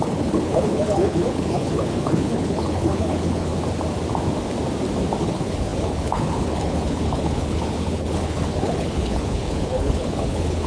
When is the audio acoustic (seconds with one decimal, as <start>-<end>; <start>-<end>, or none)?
3.5-5.2